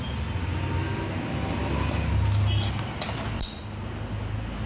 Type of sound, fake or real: real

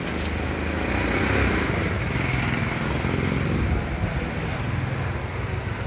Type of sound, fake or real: real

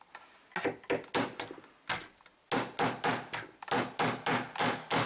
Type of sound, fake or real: real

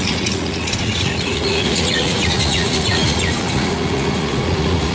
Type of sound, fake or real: fake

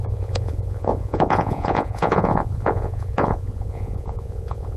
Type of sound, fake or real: fake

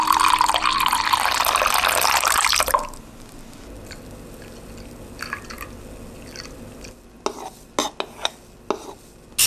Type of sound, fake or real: real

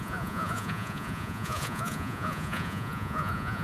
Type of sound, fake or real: fake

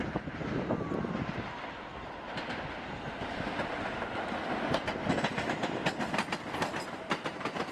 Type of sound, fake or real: real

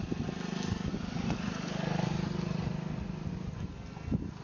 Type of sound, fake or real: real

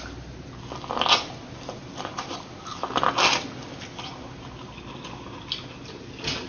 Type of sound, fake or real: real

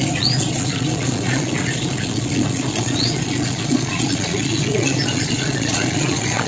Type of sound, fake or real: fake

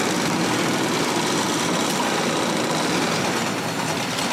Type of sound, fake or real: real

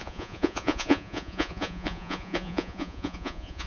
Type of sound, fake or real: fake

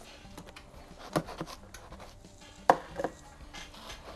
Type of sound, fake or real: real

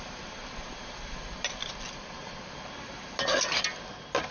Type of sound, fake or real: real